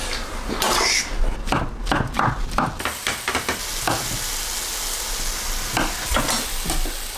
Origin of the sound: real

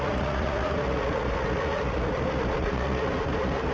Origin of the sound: fake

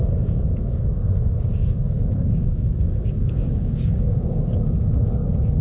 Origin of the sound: fake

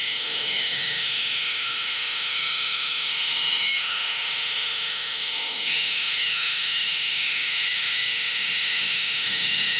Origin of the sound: fake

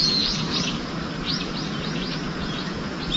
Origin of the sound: fake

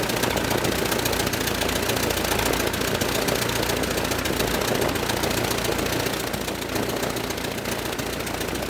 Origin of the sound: real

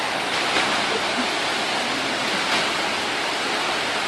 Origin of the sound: real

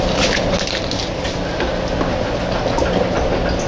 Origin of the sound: real